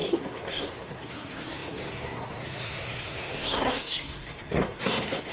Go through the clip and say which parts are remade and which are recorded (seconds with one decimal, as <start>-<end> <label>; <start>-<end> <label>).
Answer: 0.0-5.3 remade